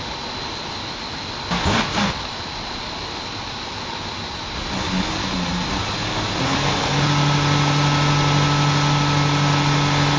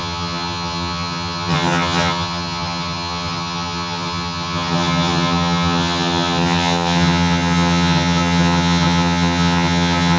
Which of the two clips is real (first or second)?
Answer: first